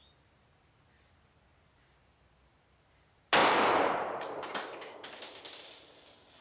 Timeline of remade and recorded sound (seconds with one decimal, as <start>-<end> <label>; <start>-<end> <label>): 0.0-6.4 recorded